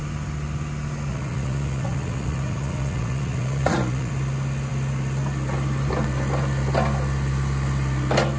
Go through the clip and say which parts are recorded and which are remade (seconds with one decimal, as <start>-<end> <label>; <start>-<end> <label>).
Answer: 0.0-1.1 recorded; 1.1-4.1 remade; 4.1-8.4 recorded